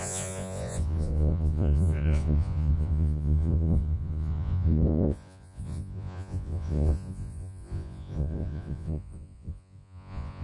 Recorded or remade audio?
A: remade